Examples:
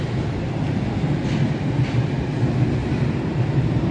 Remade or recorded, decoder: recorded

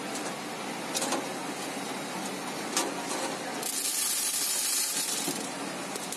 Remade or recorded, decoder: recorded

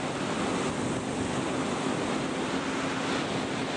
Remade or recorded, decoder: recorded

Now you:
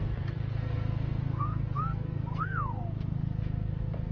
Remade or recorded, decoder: remade, codec, SNAC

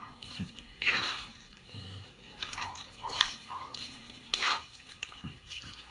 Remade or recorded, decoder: remade, codec, SNAC